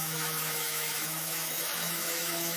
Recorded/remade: remade